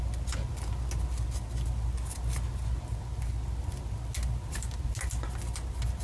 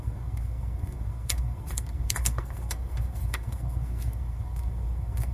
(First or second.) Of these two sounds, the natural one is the first